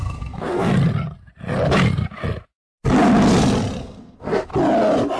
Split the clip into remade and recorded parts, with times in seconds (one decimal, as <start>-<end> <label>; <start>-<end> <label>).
0.0-0.7 remade; 0.7-3.8 recorded; 3.8-4.5 remade; 4.5-5.2 recorded